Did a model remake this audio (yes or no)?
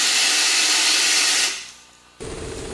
no